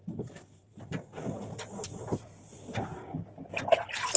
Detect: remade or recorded recorded